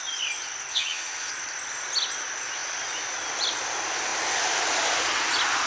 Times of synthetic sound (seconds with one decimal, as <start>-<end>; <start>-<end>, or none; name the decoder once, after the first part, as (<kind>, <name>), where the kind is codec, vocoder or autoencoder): 0.7-1.3 (vocoder, HiFi-GAN)